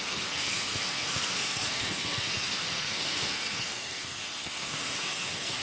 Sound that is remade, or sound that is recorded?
remade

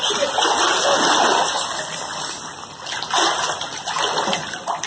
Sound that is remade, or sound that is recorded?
recorded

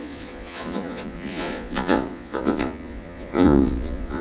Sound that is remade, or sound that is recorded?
remade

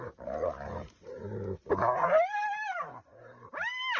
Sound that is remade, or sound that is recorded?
recorded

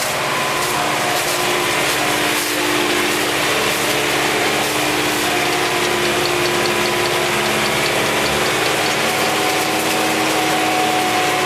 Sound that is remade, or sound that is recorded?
recorded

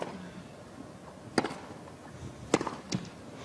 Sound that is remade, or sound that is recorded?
recorded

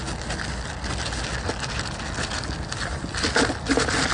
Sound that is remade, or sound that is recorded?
recorded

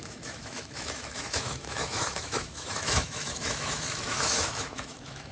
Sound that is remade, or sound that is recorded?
remade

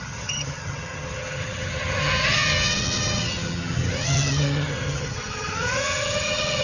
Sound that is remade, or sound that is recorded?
remade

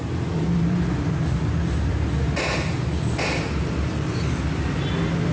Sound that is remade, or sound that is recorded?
recorded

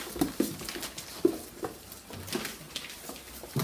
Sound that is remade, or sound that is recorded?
recorded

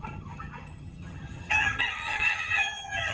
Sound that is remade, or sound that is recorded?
remade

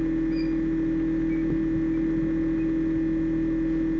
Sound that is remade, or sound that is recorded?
recorded